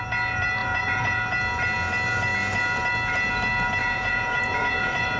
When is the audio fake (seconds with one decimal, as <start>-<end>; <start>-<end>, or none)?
0.6-1.2; 3.8-5.2